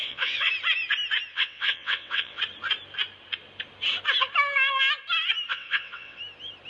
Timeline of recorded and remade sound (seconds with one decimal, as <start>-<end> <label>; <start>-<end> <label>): 0.0-0.5 remade; 0.5-1.3 recorded; 1.3-2.4 remade; 2.4-5.5 recorded; 5.5-6.2 remade; 6.2-6.7 recorded